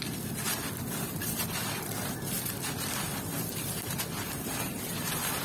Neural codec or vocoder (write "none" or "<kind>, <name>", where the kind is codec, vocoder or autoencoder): vocoder, BigVGAN v2